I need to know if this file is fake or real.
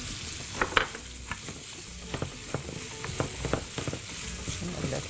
real